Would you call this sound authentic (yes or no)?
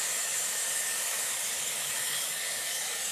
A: no